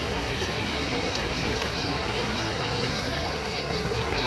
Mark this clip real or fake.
fake